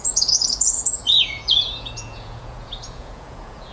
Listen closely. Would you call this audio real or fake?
fake